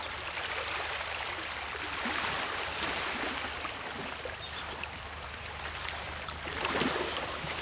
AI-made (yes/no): no